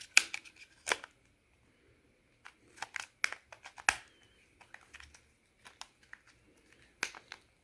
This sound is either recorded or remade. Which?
recorded